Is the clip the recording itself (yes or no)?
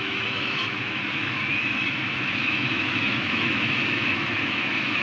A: no